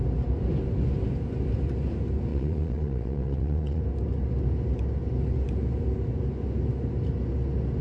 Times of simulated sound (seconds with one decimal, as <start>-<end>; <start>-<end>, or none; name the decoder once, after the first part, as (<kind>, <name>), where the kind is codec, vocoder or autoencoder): 2.3-3.8 (vocoder, Vocos)